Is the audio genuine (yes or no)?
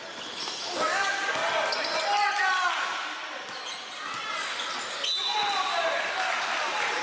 yes